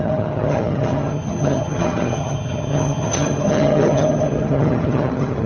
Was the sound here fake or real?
fake